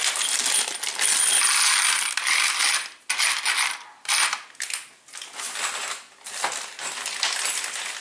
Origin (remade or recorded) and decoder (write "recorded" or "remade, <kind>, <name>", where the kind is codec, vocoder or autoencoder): recorded